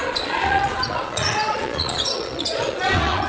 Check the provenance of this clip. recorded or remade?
remade